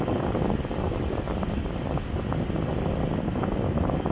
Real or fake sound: real